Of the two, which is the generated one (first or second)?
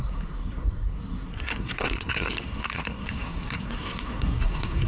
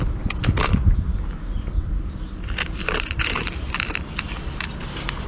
first